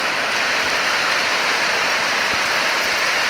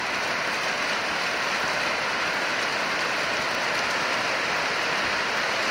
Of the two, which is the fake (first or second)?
first